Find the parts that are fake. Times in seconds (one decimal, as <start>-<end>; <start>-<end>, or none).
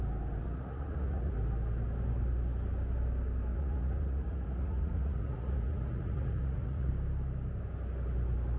0.4-1.3; 3.5-6.9